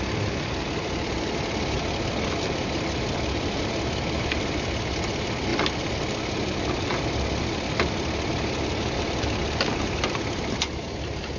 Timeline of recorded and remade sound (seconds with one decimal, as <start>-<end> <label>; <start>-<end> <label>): 0.0-9.4 recorded; 9.4-10.0 remade; 10.0-11.4 recorded